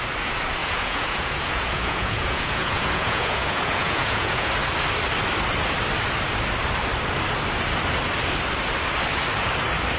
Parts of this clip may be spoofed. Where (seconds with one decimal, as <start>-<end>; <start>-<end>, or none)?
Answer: 0.6-4.5